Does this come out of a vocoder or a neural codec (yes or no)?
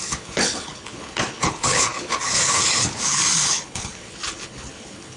yes